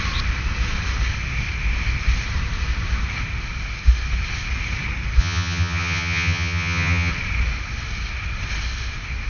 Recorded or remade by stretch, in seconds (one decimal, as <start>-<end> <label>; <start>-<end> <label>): 0.0-5.2 recorded; 5.2-7.1 remade; 7.1-9.3 recorded